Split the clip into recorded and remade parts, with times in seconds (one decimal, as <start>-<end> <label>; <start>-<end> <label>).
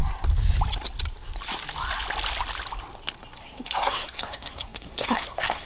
0.0-3.4 recorded; 3.4-5.7 remade